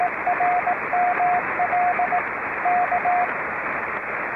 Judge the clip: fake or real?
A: real